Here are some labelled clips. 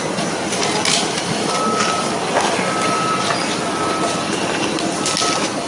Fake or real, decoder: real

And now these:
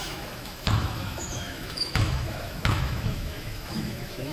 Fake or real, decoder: fake, autoencoder, DAC-VAE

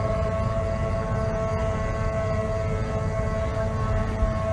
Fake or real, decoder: real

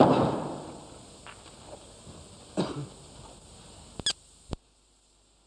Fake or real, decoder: real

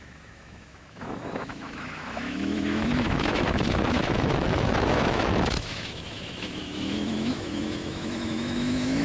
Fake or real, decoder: fake, autoencoder, DAC-VAE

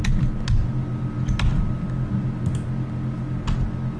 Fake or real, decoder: real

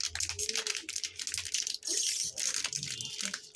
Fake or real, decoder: real